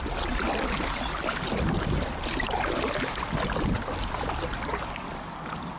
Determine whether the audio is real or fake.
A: real